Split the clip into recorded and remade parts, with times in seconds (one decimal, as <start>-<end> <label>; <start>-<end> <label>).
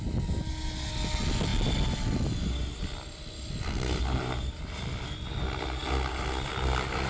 0.0-7.1 recorded